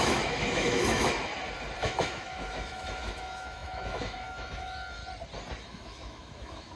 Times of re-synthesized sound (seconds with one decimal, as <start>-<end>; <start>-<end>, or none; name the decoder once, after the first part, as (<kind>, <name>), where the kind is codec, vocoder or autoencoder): 0.0-1.3 (autoencoder, DAC-VAE); 1.8-5.0; 5.6-6.8